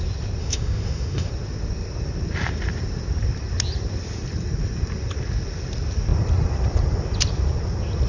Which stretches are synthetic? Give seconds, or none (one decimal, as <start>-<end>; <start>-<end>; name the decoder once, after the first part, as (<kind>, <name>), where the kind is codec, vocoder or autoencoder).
0.4-1.3 (autoencoder, DAC-VAE)